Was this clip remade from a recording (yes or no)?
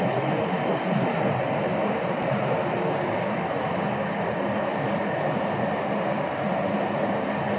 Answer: no